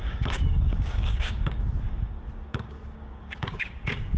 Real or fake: fake